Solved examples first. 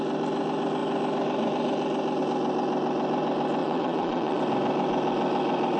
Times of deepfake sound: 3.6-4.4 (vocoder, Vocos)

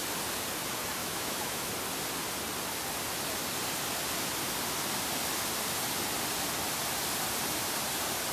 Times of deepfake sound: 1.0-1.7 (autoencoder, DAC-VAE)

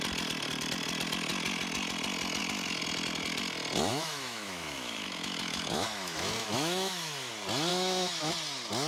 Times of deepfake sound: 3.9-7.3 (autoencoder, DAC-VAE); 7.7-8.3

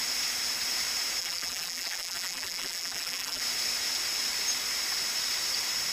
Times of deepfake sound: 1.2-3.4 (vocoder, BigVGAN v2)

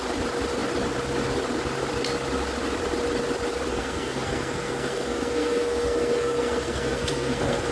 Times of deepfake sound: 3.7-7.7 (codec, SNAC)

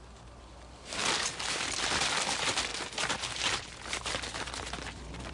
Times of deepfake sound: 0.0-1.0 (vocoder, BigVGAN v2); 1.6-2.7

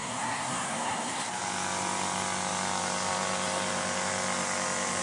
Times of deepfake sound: 0.0-1.3 (codec, SNAC)

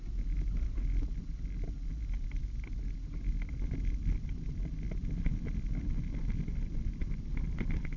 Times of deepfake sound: none